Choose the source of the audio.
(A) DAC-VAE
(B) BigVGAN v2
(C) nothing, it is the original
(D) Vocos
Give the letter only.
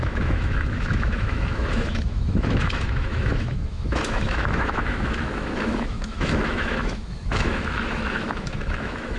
A